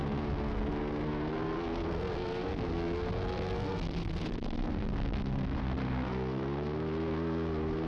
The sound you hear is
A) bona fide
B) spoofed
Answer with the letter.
B